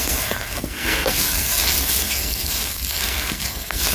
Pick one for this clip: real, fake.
fake